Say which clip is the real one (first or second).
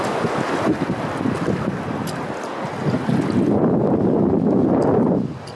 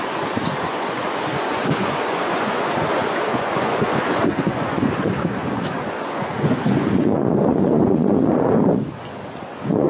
first